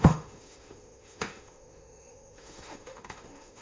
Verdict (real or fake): fake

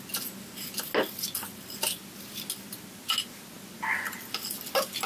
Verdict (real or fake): real